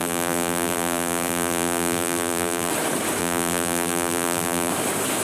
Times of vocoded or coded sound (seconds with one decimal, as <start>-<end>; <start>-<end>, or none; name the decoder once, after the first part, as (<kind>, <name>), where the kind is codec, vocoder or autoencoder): 0.0-2.7 (vocoder, BigVGAN v2); 3.2-4.7